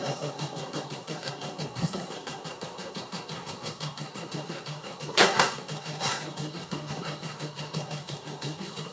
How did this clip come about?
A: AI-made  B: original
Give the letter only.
A